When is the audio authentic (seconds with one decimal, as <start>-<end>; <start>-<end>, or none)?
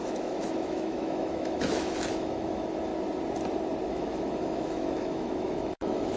2.9-3.9